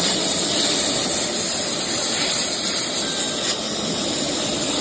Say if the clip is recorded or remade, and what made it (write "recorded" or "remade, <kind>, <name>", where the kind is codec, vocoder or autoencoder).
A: recorded